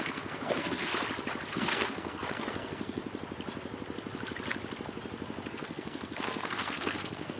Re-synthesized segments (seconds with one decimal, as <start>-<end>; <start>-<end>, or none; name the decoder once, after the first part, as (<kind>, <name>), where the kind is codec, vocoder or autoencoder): 0.0-0.9 (codec, SNAC); 1.5-3.0; 5.5-7.4